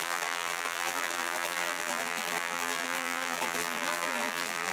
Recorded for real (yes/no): no